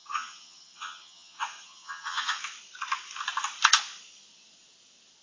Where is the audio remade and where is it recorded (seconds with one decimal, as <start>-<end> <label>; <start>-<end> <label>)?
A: 0.0-2.4 remade; 2.4-5.2 recorded